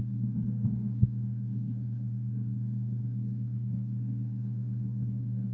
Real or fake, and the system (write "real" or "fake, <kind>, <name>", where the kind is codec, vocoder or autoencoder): fake, codec, SNAC